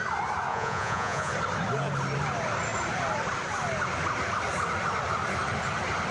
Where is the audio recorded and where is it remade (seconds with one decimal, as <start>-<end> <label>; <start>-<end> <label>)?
0.0-0.5 recorded; 0.5-1.3 remade; 1.3-6.1 recorded